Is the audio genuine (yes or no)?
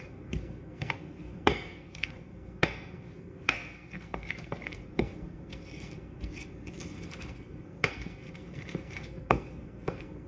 no